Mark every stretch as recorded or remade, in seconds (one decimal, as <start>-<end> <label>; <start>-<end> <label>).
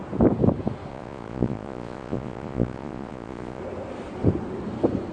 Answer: 0.0-0.9 recorded; 0.9-3.6 remade; 3.6-5.1 recorded